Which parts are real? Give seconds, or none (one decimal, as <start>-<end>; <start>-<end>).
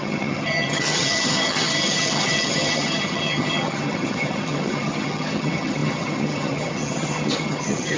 none